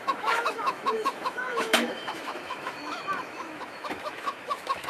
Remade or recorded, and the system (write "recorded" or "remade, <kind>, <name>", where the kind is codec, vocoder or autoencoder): remade, autoencoder, DAC-VAE